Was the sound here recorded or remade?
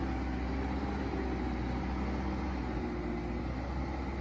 recorded